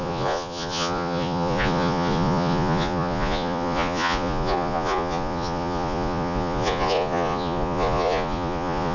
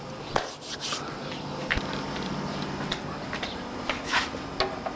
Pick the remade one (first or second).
first